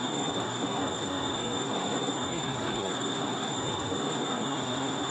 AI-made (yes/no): yes